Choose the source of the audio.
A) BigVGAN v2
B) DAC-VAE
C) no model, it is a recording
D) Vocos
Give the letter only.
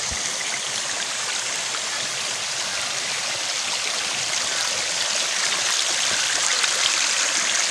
C